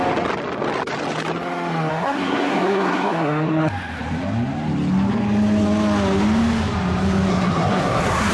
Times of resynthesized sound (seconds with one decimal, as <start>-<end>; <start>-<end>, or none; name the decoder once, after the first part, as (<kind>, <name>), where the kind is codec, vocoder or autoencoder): 1.9-3.7 (codec, SNAC); 7.3-8.3